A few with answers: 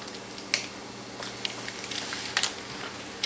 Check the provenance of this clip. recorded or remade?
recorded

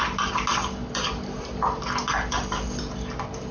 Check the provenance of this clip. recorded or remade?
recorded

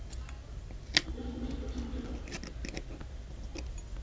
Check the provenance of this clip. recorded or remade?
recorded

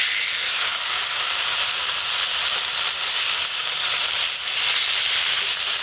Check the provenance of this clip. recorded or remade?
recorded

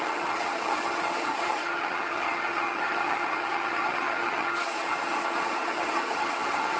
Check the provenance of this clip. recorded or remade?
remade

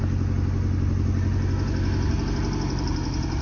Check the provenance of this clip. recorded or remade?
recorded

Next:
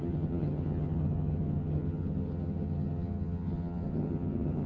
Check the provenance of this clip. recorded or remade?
remade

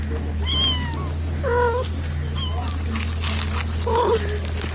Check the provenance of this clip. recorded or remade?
recorded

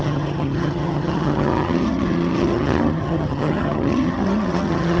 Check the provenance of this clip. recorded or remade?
remade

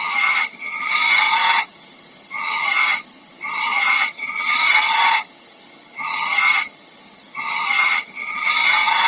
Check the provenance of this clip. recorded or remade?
remade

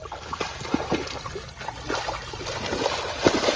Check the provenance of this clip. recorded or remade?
recorded